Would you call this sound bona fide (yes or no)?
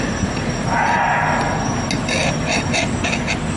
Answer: yes